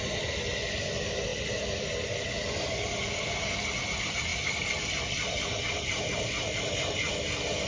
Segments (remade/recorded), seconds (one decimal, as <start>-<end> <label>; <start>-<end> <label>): 0.0-7.7 recorded